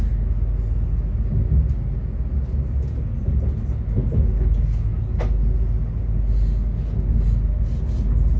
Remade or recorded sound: recorded